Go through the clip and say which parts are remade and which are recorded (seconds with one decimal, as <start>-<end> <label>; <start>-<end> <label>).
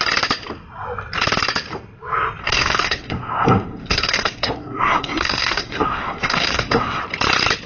0.0-2.4 recorded; 2.4-7.0 remade; 7.0-7.7 recorded